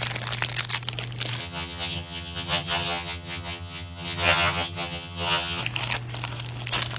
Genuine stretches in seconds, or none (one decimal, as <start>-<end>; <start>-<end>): 0.0-1.4; 5.6-7.0